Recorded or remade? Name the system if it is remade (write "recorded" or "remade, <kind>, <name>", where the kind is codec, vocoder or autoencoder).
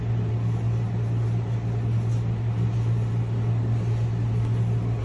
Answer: recorded